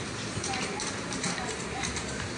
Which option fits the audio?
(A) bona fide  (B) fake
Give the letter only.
B